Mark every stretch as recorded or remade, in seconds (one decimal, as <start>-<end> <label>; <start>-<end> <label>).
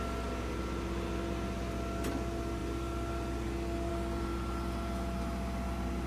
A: 0.0-6.1 recorded